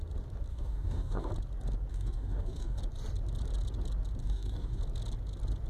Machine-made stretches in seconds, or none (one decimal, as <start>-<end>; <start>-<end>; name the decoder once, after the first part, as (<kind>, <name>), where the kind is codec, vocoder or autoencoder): 0.5-1.3 (codec, DAC); 1.9-2.8; 4.2-4.8